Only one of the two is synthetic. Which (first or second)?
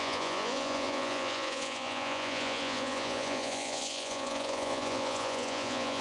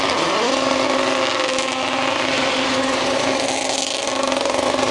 first